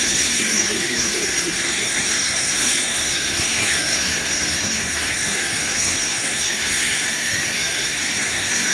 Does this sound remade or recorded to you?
remade